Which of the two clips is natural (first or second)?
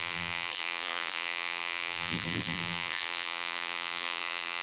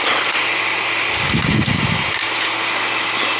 second